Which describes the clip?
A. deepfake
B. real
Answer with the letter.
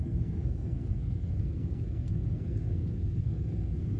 A